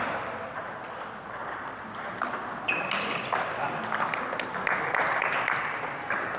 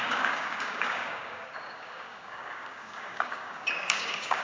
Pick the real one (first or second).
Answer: first